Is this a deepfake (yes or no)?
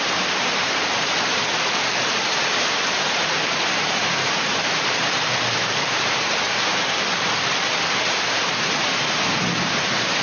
yes